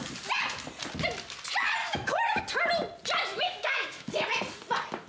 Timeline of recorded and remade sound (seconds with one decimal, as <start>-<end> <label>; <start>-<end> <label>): 0.0-1.8 recorded; 1.8-2.4 remade; 2.4-3.3 recorded; 3.3-4.1 remade; 4.1-5.1 recorded